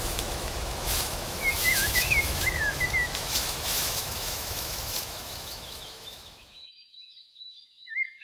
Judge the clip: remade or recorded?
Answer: remade